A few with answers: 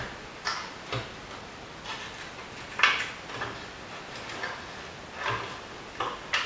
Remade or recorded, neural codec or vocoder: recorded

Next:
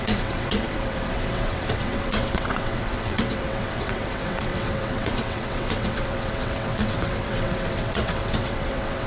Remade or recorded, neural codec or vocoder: remade, vocoder, WaveNeXt